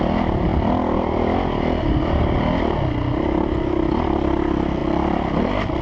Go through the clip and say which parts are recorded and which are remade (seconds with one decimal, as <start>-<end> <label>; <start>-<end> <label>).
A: 0.0-5.8 recorded

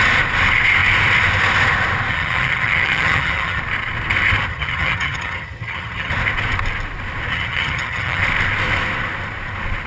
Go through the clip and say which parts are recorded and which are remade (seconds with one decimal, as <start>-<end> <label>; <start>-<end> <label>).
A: 0.0-2.1 recorded; 2.1-3.6 remade; 3.6-4.5 recorded; 4.5-6.1 remade; 6.1-7.3 recorded; 7.3-8.2 remade; 8.2-9.9 recorded

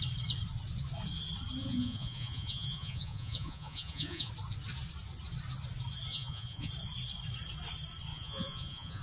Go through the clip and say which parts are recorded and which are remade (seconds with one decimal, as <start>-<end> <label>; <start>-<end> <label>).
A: 0.0-1.6 recorded; 1.6-4.3 remade; 4.3-6.1 recorded; 6.1-6.7 remade; 6.7-8.1 recorded; 8.1-9.0 remade

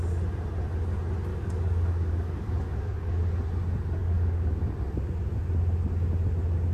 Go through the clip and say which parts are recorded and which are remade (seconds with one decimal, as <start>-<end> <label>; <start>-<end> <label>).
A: 0.0-1.3 recorded; 1.3-3.2 remade; 3.2-4.0 recorded; 4.0-4.5 remade; 4.5-6.7 recorded

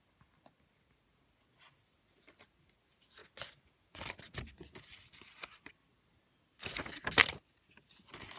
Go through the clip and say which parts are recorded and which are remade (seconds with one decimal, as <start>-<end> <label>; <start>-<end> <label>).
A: 0.0-8.4 recorded

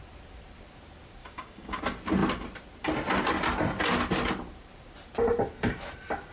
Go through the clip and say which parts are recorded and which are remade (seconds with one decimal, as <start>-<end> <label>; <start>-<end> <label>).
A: 0.0-1.2 recorded; 1.2-1.8 remade; 1.8-6.3 recorded

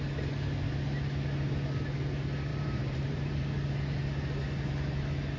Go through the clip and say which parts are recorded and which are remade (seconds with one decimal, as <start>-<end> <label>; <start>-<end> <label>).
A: 0.0-2.5 recorded; 2.5-3.4 remade; 3.4-5.4 recorded

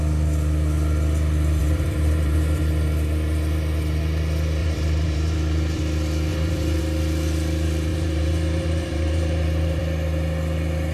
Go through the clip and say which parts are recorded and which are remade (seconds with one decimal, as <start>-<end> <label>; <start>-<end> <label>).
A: 0.0-1.6 recorded; 1.6-2.6 remade; 2.6-4.6 recorded; 4.6-5.8 remade; 5.8-6.3 recorded; 6.3-6.8 remade; 6.8-7.9 recorded; 7.9-9.8 remade; 9.8-10.9 recorded